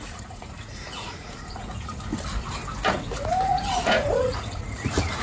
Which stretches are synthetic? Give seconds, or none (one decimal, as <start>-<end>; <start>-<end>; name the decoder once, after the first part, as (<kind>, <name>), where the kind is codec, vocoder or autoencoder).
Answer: 0.0-2.1 (vocoder, Vocos); 2.9-5.2